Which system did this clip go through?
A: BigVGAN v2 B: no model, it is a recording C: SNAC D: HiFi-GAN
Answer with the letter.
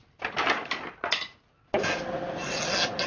B